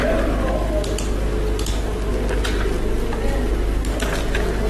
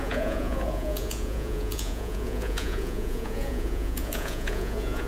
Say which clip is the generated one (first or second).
second